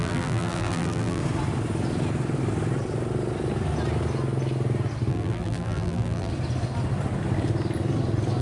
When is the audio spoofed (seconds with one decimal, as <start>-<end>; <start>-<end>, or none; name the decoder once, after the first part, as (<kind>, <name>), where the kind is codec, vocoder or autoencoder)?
0.0-1.2 (vocoder, BigVGAN v2); 5.1-6.3